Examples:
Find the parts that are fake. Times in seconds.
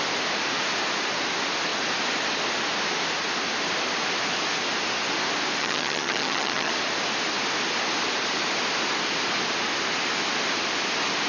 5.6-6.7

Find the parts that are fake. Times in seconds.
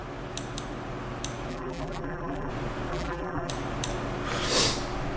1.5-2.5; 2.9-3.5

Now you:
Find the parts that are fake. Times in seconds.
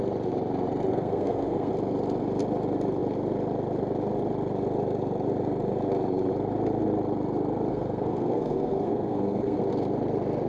0.9-1.7; 7.7-9.6